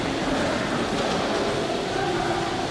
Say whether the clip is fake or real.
real